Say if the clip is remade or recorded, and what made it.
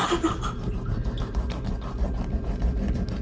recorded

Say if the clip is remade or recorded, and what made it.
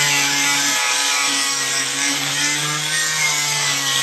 remade, codec, DAC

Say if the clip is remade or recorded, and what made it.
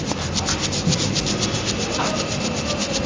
recorded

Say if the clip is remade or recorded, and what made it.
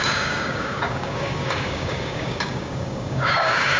remade, codec, DAC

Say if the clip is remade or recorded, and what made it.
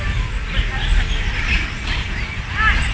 recorded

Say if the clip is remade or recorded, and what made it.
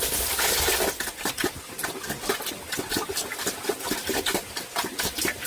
recorded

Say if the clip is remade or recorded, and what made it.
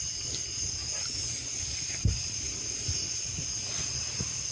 recorded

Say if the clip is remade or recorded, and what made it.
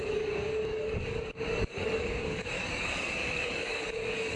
remade, codec, DAC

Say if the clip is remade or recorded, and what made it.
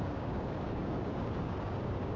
remade, codec, DAC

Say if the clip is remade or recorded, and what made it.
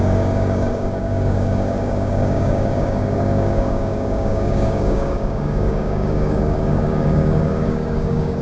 remade, codec, DAC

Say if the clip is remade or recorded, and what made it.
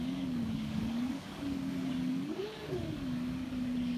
remade, codec, DAC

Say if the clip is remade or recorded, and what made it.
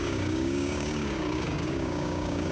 remade, codec, DAC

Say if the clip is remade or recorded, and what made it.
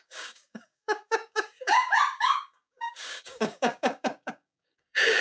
remade, codec, DAC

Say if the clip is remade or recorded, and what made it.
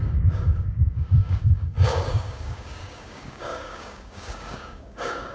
remade, codec, DAC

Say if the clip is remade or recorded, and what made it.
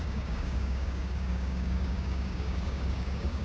remade, codec, DAC